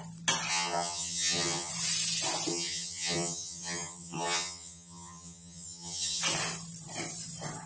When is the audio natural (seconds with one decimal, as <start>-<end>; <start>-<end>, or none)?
0.0-0.5; 1.7-2.5; 6.2-7.7